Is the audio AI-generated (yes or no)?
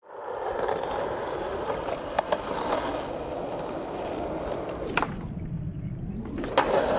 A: no